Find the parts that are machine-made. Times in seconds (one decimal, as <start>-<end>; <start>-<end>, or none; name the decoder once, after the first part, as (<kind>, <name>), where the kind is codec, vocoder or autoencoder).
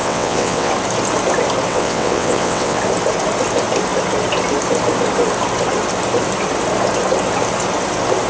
0.0-0.7 (vocoder, WaveNeXt); 1.7-2.8